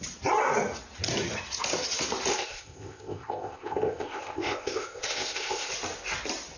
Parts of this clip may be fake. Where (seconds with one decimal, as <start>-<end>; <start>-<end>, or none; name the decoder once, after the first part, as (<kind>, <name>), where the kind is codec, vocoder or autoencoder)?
2.3-5.7 (codec, ZipCodec)